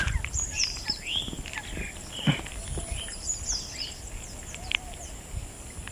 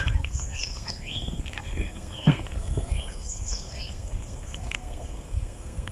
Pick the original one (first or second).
first